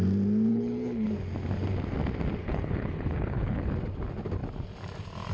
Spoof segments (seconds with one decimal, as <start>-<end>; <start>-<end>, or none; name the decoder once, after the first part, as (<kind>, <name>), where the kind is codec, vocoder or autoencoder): 0.5-1.1 (codec, HILCodec); 2.4-3.7